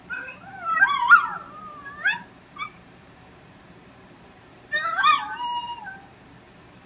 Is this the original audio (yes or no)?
no